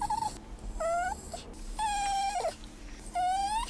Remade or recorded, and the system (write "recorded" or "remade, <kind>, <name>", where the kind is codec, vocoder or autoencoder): recorded